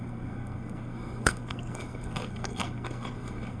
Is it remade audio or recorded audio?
remade